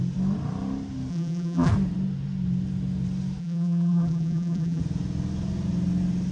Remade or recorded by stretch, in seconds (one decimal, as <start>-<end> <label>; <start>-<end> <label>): 0.0-1.1 recorded; 1.1-1.7 remade; 1.7-3.4 recorded; 3.4-4.8 remade; 4.8-6.3 recorded